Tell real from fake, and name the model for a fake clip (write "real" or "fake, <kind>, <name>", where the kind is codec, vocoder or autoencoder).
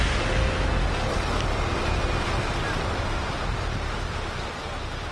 real